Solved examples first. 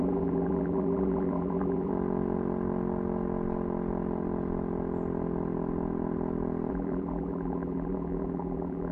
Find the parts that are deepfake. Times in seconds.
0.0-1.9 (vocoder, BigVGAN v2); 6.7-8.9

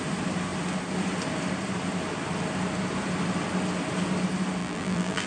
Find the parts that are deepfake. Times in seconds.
4.6-5.3 (vocoder, BigVGAN v2)

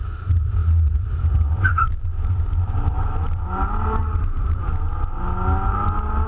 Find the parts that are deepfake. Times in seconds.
0.0-4.6 (vocoder, BigVGAN v2); 5.7-6.3

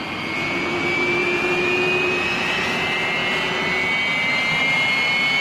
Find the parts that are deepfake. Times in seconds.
none

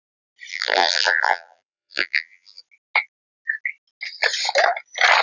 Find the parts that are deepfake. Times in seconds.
0.5-2.6 (vocoder, BigVGAN v2)

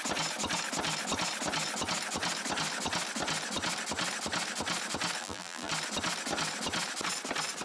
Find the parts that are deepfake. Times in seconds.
5.2-5.7 (vocoder, BigVGAN v2)